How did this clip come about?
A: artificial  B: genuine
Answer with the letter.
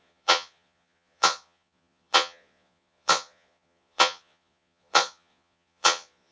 A